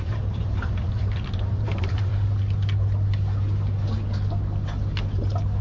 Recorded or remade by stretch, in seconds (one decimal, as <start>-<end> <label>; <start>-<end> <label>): 0.0-2.1 remade; 2.1-5.6 recorded